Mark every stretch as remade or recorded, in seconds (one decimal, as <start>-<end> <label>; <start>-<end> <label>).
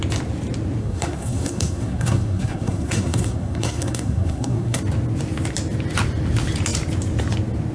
0.0-0.8 recorded; 0.8-4.8 remade; 4.8-7.7 recorded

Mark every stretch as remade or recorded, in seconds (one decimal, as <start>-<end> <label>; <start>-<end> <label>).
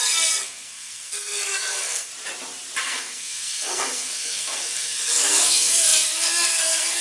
0.0-2.1 remade; 2.1-2.8 recorded; 2.8-7.0 remade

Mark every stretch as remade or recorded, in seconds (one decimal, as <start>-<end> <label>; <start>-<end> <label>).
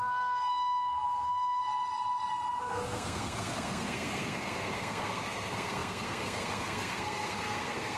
0.0-1.6 remade; 1.6-2.6 recorded; 2.6-8.0 remade